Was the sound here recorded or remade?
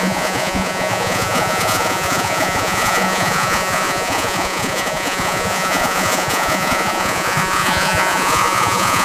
remade